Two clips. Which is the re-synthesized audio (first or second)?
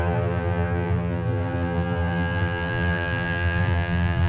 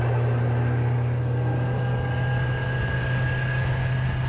first